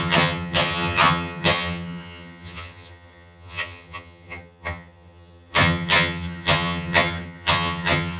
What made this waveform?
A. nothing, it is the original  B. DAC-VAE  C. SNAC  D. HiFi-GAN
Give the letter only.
D